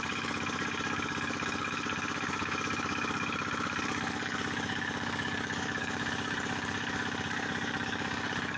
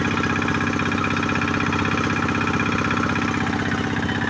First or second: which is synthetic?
first